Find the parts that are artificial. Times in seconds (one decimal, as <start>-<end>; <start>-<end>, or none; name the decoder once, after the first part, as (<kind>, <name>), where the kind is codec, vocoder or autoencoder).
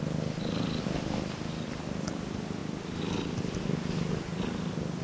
none